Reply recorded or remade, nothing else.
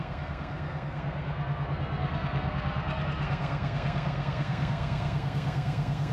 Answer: remade